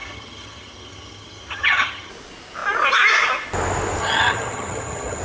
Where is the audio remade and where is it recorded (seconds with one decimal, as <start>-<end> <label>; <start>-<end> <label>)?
0.0-2.1 remade; 2.1-4.0 recorded; 4.0-5.2 remade